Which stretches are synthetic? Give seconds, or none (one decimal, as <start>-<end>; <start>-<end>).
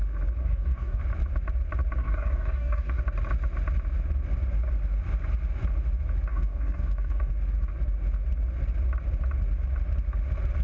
0.4-1.0; 2.0-3.0; 6.3-7.3